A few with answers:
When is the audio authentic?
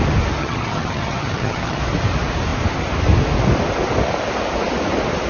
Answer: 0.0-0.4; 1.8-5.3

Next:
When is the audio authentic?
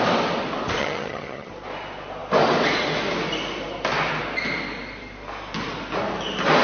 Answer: 0.0-0.8; 1.5-6.6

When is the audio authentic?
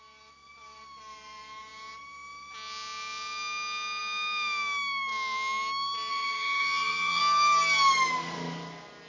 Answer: 0.0-6.1; 7.2-9.1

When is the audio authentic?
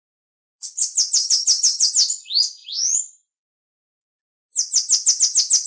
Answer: 0.0-1.2; 1.9-5.7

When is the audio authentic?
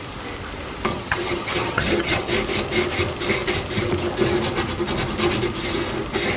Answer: 0.0-0.9; 2.3-6.4